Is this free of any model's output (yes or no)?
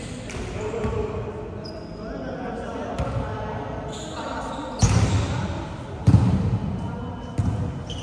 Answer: yes